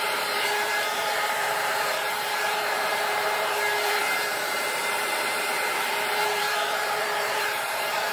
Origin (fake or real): fake